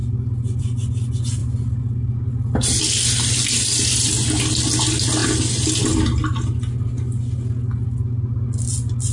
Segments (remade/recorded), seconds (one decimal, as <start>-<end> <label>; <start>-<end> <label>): 0.0-9.1 recorded